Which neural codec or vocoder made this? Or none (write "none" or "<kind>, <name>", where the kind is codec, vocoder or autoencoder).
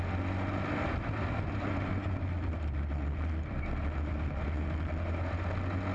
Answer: none